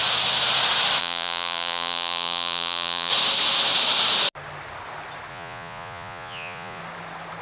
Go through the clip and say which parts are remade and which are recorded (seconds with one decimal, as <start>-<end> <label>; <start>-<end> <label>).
0.0-1.0 recorded; 1.0-3.1 remade; 3.1-5.3 recorded; 5.3-6.8 remade; 6.8-7.4 recorded